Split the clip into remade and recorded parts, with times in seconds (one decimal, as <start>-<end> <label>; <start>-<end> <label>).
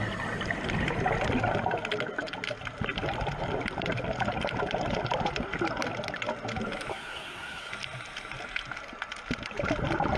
0.0-6.9 recorded; 6.9-7.7 remade; 7.7-10.2 recorded